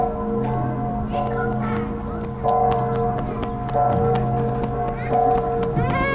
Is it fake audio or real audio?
real